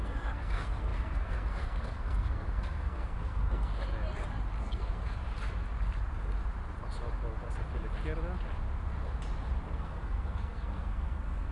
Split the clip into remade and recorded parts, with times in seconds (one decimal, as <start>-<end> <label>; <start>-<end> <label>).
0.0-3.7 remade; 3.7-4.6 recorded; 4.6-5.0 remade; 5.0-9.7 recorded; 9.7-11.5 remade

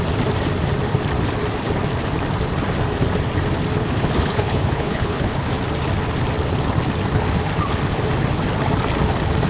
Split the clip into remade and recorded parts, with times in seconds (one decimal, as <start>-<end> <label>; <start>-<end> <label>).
0.0-3.8 recorded; 3.8-5.5 remade; 5.5-9.5 recorded

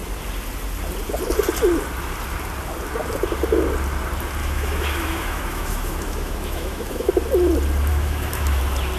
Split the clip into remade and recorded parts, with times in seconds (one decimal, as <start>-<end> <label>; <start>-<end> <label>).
0.0-4.4 recorded; 4.4-7.1 remade; 7.1-7.9 recorded; 7.9-8.6 remade; 8.6-9.0 recorded